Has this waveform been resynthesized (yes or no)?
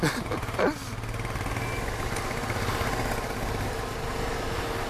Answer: no